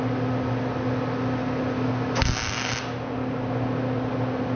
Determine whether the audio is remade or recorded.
recorded